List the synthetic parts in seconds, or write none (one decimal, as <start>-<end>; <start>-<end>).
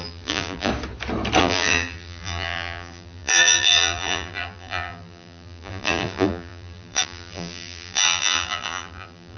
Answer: 0.0-0.7; 1.4-9.4